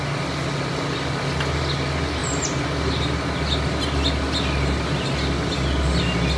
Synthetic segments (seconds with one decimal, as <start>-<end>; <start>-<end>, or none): none